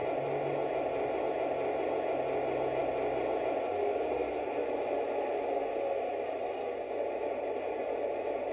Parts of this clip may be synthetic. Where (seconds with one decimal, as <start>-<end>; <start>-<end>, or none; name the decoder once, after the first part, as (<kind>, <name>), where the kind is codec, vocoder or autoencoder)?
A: none